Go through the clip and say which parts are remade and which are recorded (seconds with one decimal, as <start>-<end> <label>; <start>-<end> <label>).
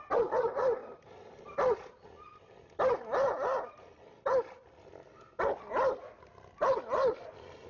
0.0-7.7 recorded